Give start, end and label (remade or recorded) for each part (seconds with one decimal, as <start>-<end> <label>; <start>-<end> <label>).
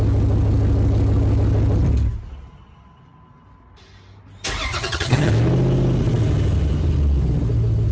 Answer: 0.0-4.7 recorded; 4.7-5.3 remade; 5.3-7.9 recorded